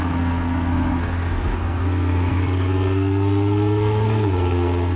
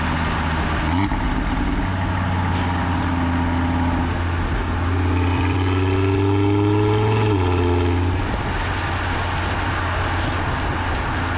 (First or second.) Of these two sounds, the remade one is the first